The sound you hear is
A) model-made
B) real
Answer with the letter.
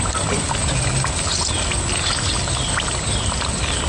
B